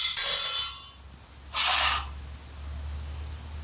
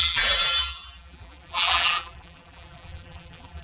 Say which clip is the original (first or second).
first